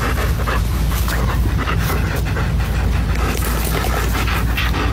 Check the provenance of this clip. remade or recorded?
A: recorded